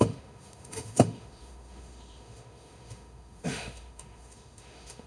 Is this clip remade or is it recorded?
remade